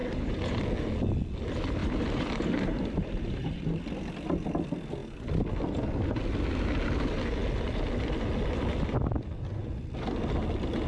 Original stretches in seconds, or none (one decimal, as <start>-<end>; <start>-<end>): 0.5-1.8; 3.8-10.9